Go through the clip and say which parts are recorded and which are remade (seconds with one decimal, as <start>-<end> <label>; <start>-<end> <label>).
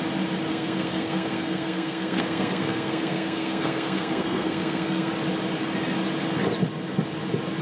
0.0-0.5 recorded; 0.5-5.1 remade; 5.1-7.6 recorded